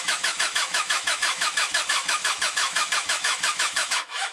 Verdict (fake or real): fake